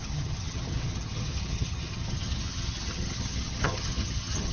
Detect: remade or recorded remade